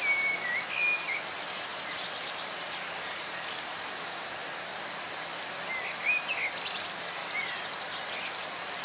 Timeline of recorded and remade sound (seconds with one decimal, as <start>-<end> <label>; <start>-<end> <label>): 0.0-1.7 recorded; 1.7-3.8 remade; 3.8-7.2 recorded; 7.2-8.2 remade; 8.2-8.8 recorded